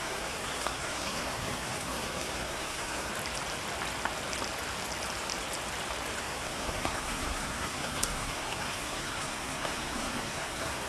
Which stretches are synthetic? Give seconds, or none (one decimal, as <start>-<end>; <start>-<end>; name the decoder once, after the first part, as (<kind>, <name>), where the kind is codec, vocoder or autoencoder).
0.0-3.1 (codec, SNAC); 6.2-10.9